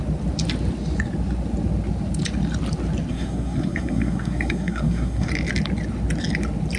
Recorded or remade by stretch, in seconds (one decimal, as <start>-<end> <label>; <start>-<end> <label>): 0.0-3.1 recorded; 3.1-5.3 remade; 5.3-6.8 recorded